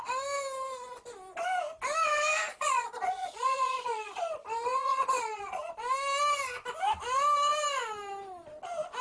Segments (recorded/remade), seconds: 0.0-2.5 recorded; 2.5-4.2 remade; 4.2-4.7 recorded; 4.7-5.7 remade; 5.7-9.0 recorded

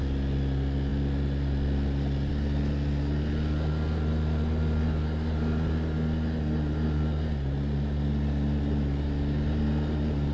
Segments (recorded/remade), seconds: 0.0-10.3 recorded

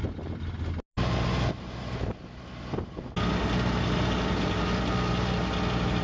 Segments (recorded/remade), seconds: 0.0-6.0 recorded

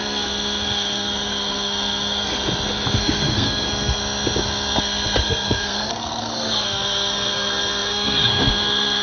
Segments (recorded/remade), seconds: 0.0-2.3 remade; 2.3-3.0 recorded; 3.0-4.0 remade; 4.0-4.8 recorded; 4.8-9.0 remade